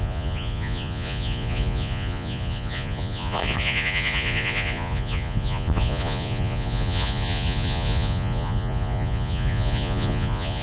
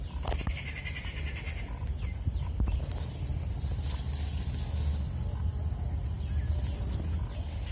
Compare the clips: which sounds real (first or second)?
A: second